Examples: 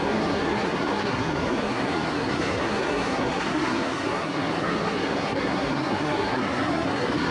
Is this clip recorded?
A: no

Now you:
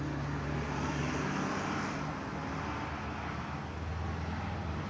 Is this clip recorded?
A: yes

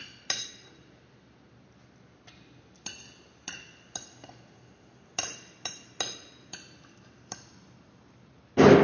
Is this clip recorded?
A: yes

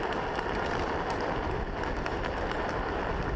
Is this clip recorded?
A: yes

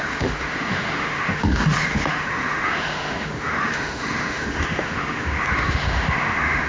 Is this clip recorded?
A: no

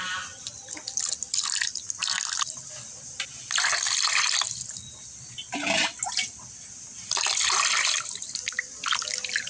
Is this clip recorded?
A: no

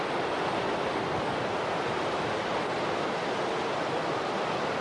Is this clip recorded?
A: yes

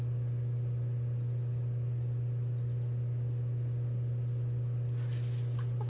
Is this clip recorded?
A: yes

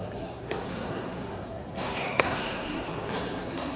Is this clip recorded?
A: no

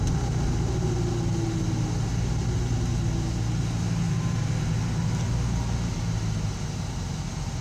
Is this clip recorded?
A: yes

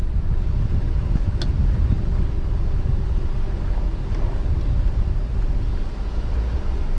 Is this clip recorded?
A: yes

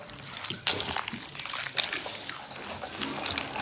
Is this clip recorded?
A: yes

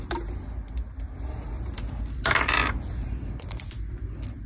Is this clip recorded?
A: yes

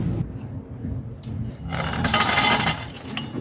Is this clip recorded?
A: yes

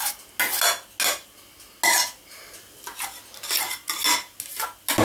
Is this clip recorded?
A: yes